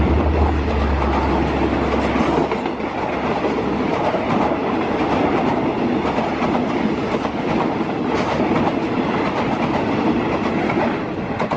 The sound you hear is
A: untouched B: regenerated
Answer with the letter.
A